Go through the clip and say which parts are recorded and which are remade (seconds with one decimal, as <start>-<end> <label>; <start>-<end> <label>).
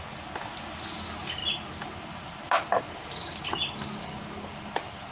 0.0-5.1 recorded